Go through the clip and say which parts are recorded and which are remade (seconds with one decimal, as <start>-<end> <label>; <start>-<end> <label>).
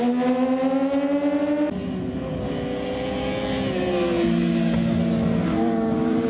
0.0-5.5 recorded; 5.5-6.3 remade